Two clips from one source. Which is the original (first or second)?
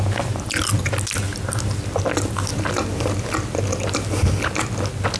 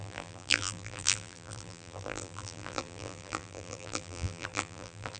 first